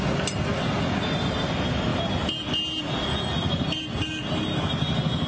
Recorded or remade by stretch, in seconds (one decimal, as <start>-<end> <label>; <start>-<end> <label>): 0.0-5.3 recorded